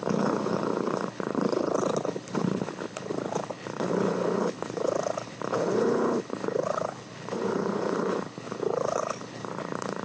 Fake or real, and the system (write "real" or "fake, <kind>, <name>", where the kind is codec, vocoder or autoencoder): fake, codec, HILCodec